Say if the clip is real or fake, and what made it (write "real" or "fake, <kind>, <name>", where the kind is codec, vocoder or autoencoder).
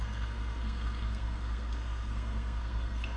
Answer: fake, codec, SNAC